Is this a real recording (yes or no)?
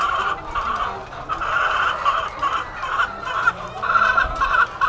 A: yes